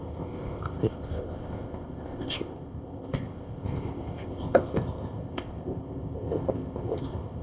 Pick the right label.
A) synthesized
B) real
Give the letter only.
A